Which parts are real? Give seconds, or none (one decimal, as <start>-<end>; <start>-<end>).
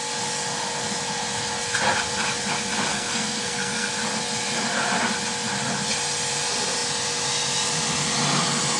0.0-2.9; 3.9-8.8